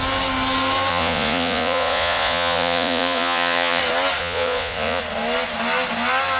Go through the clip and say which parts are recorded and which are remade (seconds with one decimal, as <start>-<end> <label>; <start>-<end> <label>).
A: 0.0-0.9 recorded; 0.9-3.8 remade; 3.8-4.2 recorded; 4.2-5.0 remade; 5.0-6.4 recorded